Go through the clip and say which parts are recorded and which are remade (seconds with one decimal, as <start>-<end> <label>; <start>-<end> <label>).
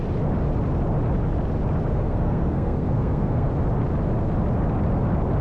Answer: 0.0-1.9 recorded; 1.9-3.5 remade; 3.5-5.4 recorded